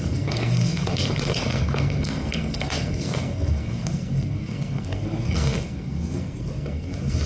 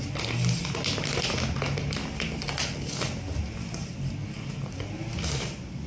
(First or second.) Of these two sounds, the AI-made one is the first